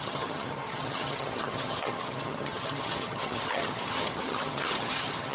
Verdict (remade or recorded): remade